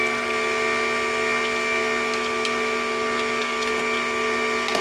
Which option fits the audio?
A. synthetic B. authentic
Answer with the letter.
B